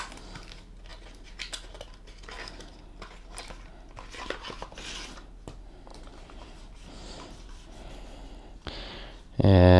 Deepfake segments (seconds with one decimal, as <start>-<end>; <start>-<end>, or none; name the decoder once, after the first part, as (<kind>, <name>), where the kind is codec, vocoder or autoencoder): 5.9-7.9 (vocoder, BigVGAN v2)